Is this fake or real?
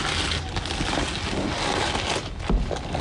real